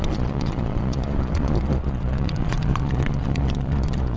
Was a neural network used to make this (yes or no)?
yes